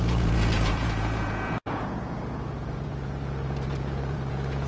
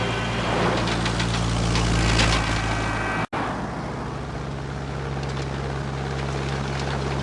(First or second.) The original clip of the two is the second